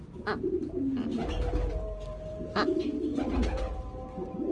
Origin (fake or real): real